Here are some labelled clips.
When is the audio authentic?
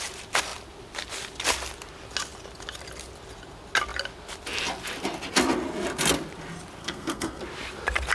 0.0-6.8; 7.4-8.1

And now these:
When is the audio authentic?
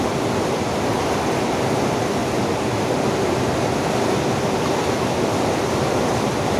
0.0-6.6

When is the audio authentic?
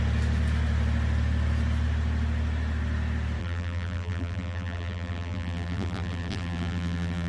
0.0-3.4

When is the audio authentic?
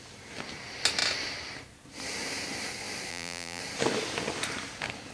0.0-3.1; 3.6-5.1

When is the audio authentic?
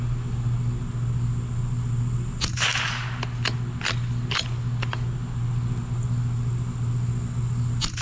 0.0-8.0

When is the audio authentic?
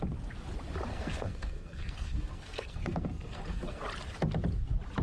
0.0-0.9; 3.8-5.0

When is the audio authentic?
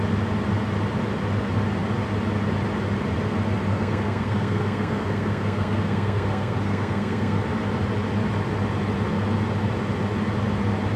0.0-3.7; 7.4-11.0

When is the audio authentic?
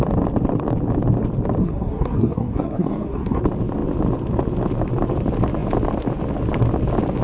0.0-1.6; 3.4-7.2